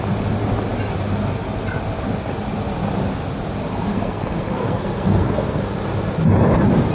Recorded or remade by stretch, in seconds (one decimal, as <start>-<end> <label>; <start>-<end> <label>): 0.0-3.6 recorded; 3.6-5.6 remade; 5.6-6.9 recorded